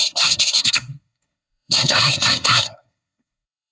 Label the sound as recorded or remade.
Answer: remade